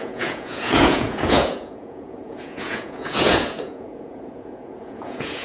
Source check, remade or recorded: remade